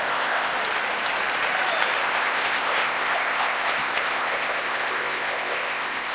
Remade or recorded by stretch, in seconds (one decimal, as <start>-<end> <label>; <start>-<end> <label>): 0.0-0.5 remade; 0.5-2.0 recorded; 2.0-6.1 remade